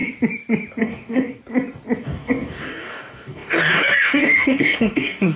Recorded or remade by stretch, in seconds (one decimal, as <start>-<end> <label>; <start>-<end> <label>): 0.0-0.8 recorded; 0.8-1.4 remade; 1.4-2.0 recorded; 2.0-5.4 remade